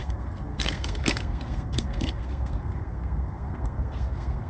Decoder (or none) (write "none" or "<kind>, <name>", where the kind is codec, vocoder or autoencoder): codec, SNAC